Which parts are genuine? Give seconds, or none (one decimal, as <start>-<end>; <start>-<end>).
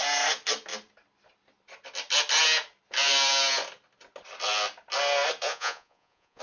0.0-5.5